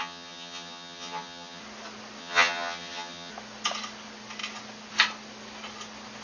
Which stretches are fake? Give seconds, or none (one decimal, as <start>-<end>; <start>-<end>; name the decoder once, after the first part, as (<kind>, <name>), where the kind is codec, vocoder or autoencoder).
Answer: 0.0-1.6 (vocoder, HiFi-GAN); 2.2-3.3